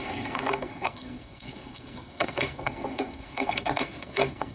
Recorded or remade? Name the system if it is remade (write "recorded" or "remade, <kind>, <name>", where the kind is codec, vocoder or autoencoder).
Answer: remade, codec, SNAC